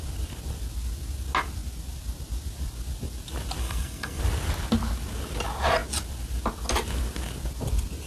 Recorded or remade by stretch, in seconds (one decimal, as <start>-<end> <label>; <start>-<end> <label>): 0.0-3.6 recorded; 3.6-4.2 remade; 4.2-8.1 recorded

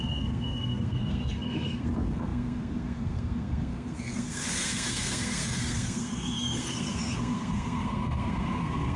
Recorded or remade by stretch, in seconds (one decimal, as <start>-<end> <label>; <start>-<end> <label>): 0.0-9.0 remade